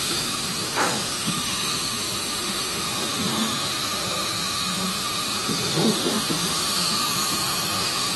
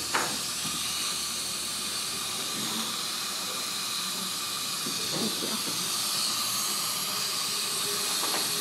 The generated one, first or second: first